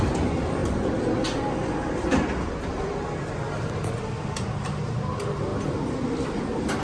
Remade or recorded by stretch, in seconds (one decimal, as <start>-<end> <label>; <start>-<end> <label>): 0.0-6.8 recorded